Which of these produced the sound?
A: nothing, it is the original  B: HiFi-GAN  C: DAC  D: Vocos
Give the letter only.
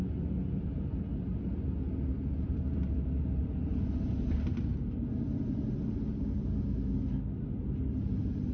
A